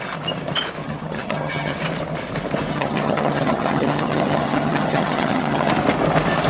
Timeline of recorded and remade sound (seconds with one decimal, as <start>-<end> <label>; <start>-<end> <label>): 0.0-0.8 recorded; 0.8-1.8 remade; 1.8-2.7 recorded; 2.7-5.7 remade; 5.7-6.5 recorded